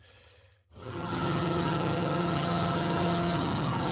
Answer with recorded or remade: remade